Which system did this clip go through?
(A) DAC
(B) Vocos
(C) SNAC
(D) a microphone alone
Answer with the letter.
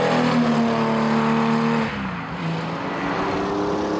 D